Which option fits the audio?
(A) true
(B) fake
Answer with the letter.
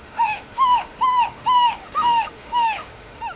B